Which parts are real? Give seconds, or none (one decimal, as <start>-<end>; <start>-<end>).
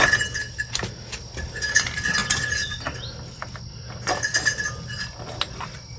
0.0-6.0